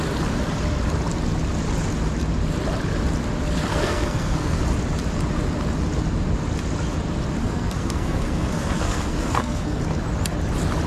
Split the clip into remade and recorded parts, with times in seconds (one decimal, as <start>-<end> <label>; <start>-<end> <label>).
0.0-3.7 recorded; 3.7-4.6 remade; 4.6-7.4 recorded; 7.4-9.8 remade; 9.8-10.9 recorded